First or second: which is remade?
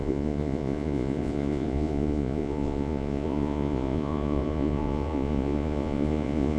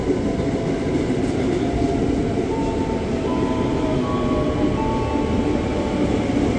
first